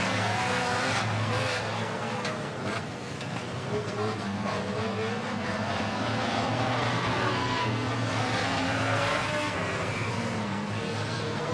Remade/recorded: remade